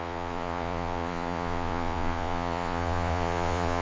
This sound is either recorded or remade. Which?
remade